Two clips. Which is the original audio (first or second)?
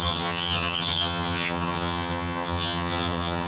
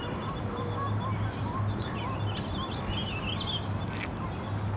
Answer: second